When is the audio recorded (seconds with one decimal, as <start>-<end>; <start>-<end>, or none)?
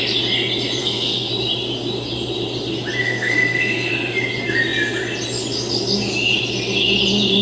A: 0.0-0.8; 1.3-3.0; 3.9-7.4